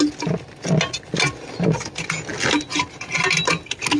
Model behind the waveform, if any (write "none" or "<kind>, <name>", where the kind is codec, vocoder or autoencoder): none